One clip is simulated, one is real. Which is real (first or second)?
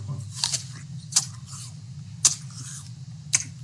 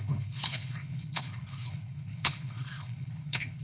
first